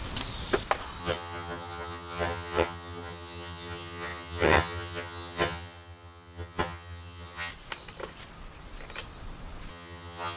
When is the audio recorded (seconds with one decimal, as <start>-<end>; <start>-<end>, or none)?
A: 0.0-1.0; 7.5-9.7